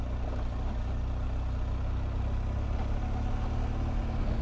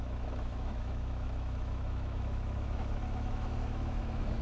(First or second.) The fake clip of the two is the second